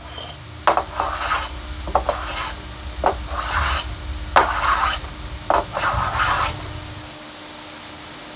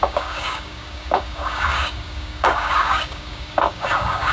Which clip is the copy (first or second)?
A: second